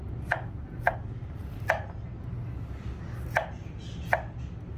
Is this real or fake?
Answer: real